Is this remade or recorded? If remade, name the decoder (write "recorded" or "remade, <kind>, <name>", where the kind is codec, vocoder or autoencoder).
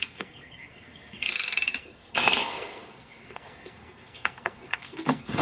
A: remade, codec, SNAC